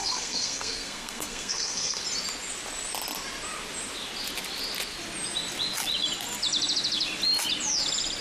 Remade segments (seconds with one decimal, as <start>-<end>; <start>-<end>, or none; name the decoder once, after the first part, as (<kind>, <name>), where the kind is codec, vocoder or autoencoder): 0.0-2.0 (codec, SNAC)